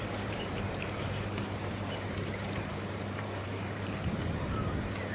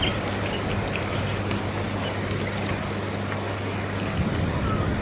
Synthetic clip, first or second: first